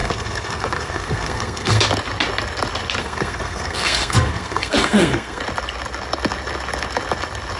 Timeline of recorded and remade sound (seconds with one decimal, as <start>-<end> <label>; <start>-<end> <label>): 0.0-1.8 remade; 1.8-3.0 recorded; 3.0-5.4 remade; 5.4-7.6 recorded